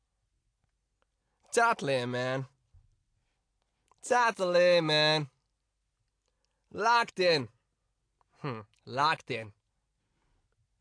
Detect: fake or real real